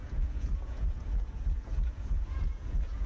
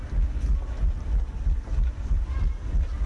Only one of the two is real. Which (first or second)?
second